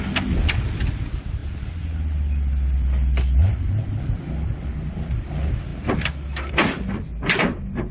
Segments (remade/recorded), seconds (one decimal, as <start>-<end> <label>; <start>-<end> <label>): 0.0-7.9 recorded